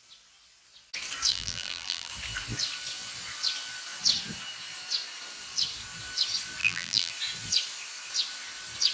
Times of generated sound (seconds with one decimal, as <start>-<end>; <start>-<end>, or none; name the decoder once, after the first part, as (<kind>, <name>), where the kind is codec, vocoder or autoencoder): 1.3-2.1 (vocoder, BigVGAN v2); 6.6-7.1